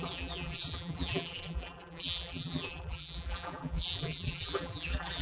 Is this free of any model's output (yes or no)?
no